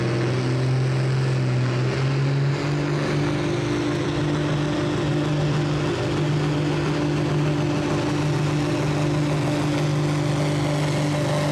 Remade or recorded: recorded